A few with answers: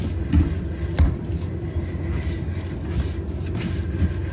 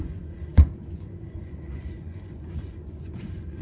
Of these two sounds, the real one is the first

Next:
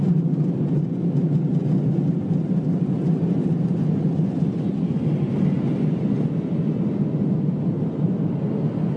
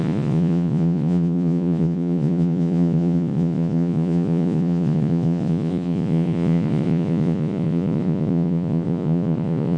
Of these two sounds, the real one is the first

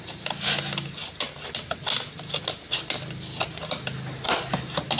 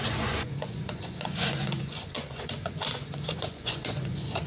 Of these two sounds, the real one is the first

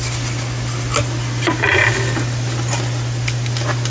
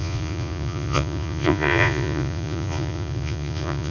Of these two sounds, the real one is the first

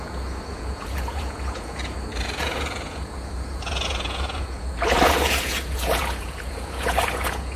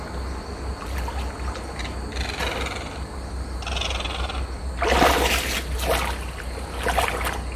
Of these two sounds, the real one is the second